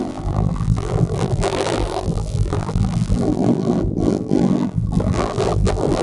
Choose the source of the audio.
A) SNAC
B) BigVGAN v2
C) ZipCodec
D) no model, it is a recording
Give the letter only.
B